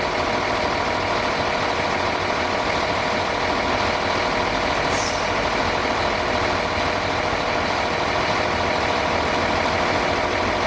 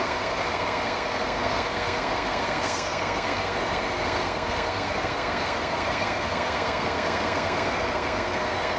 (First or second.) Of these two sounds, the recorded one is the first